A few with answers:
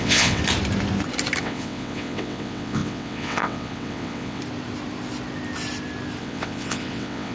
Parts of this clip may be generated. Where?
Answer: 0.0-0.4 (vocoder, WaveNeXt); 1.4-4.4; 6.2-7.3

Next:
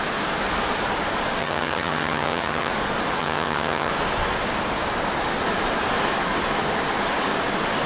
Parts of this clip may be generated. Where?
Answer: 1.4-2.7 (vocoder, HiFi-GAN); 3.2-3.9

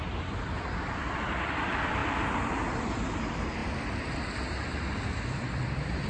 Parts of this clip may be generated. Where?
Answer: 0.0-6.1 (vocoder, BigVGAN v2)